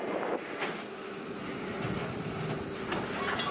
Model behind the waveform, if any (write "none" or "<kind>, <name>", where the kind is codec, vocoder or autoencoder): none